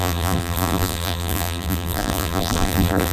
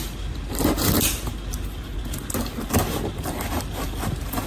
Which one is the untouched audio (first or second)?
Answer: second